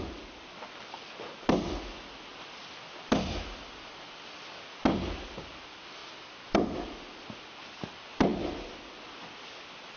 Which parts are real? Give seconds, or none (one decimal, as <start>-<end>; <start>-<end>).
0.0-10.0